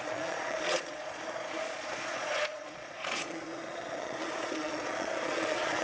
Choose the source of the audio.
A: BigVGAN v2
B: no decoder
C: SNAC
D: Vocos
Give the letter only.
D